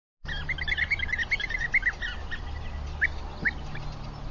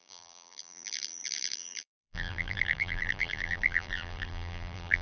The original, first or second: first